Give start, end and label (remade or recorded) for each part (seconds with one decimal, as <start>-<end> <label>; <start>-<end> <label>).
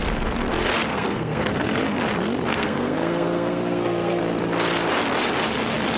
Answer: 0.0-0.9 recorded; 0.9-1.8 remade; 1.8-2.5 recorded; 2.5-4.2 remade; 4.2-6.0 recorded